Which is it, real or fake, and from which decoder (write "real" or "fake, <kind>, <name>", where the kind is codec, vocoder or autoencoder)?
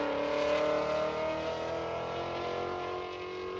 real